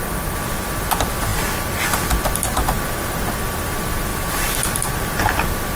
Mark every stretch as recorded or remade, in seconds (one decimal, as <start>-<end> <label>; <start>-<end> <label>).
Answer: 0.0-4.1 recorded; 4.1-4.8 remade; 4.8-5.8 recorded